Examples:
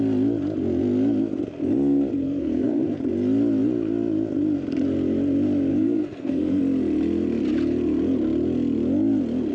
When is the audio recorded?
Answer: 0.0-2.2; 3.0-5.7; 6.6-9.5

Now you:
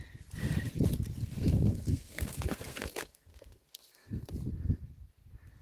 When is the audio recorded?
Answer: 0.0-1.2; 4.3-5.6

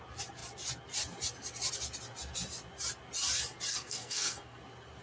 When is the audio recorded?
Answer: 0.0-3.7; 4.6-5.0

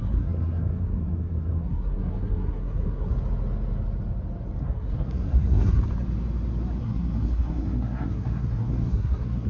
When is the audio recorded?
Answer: 3.1-4.6; 5.8-6.8

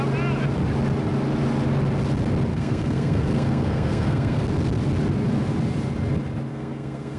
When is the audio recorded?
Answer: 0.0-2.5; 4.5-6.5